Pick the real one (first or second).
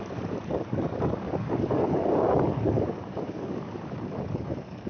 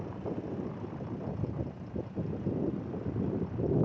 second